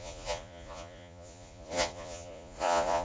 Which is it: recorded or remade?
remade